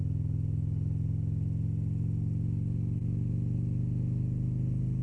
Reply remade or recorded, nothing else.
recorded